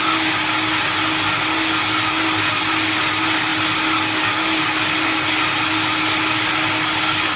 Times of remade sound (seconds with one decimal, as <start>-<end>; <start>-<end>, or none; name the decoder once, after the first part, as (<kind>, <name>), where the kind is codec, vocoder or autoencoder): none